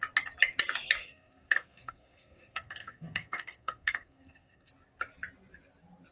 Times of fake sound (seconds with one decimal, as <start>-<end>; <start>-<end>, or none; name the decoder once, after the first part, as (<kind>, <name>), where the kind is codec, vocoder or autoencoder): 1.0-4.7 (codec, SNAC)